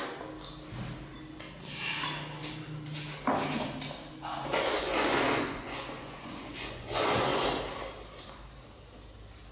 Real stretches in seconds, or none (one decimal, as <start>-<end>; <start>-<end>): 0.0-4.5; 7.4-9.5